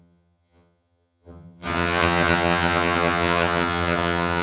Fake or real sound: fake